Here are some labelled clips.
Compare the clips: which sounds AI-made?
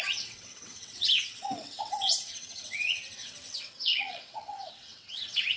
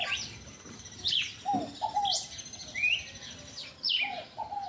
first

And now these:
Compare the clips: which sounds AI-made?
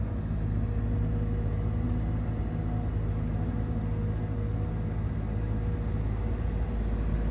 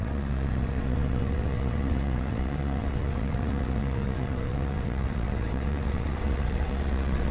second